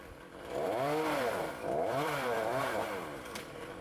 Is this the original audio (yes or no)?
no